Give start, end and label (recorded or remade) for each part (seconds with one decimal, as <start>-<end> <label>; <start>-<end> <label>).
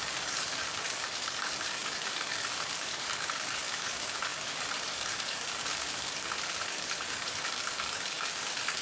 0.0-8.8 remade